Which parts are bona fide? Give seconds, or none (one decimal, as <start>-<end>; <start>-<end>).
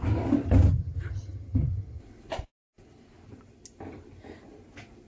0.0-0.7; 2.0-5.1